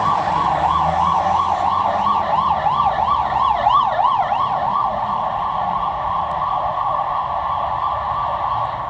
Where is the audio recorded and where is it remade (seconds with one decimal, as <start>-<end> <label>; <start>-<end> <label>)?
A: 0.0-3.6 recorded; 3.6-7.2 remade; 7.2-8.9 recorded